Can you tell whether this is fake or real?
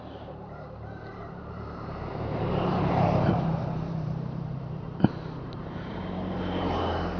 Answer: fake